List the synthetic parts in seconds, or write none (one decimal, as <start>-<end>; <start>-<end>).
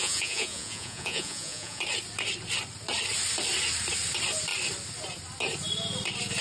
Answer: 0.0-1.8